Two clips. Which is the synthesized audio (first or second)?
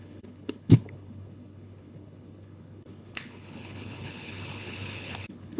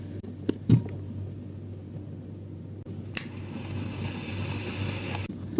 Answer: first